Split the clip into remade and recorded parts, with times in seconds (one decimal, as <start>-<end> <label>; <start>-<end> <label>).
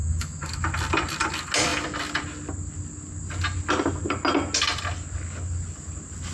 0.0-0.5 remade; 0.5-6.3 recorded